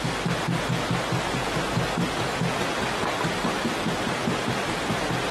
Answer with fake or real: real